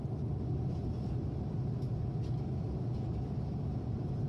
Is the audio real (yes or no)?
yes